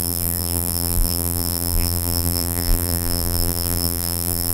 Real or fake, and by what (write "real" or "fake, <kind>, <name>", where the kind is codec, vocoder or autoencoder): fake, vocoder, BigVGAN v2